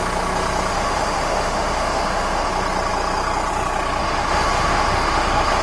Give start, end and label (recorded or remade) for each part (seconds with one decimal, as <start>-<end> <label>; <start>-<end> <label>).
0.0-0.7 recorded; 0.7-2.5 remade; 2.5-4.0 recorded; 4.0-5.6 remade